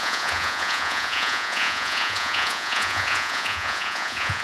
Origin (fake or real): fake